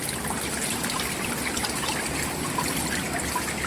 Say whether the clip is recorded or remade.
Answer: recorded